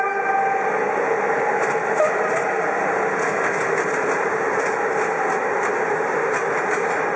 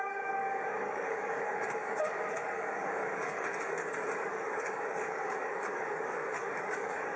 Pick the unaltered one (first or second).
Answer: first